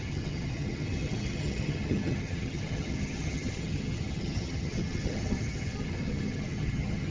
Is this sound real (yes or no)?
no